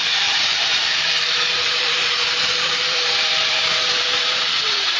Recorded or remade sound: remade